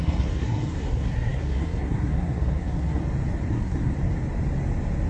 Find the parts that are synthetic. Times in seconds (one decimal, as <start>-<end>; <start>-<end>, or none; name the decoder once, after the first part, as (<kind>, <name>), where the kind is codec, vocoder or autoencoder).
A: 0.0-3.0 (codec, SNAC); 3.5-3.9